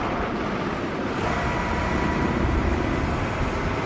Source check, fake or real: real